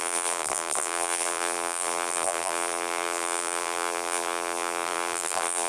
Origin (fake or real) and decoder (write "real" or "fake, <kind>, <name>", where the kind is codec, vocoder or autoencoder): fake, vocoder, BigVGAN v2